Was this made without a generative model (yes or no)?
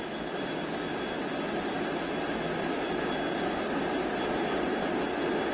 yes